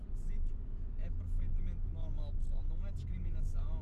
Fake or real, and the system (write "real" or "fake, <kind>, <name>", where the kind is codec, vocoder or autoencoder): real